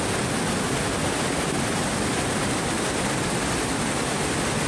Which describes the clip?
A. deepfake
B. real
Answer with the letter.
B